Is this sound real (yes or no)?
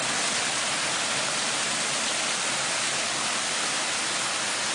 yes